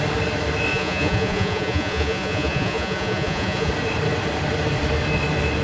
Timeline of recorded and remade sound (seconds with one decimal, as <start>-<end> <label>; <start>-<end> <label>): 0.0-0.7 recorded; 0.7-3.7 remade; 3.7-5.6 recorded